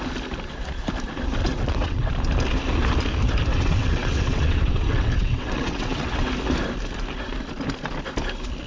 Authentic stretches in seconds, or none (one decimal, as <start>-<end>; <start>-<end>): 0.0-1.4; 2.1-3.5; 6.3-8.7